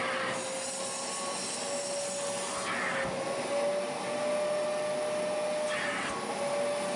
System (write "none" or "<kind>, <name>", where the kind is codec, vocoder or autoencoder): none